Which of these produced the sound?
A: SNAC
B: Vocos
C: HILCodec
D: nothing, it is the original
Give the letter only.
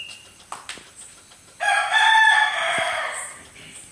D